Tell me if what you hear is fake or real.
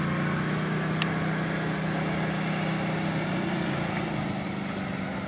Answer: real